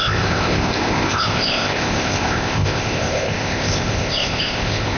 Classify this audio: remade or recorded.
remade